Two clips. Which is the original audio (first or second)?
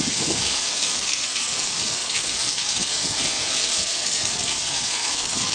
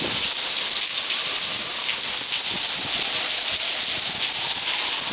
second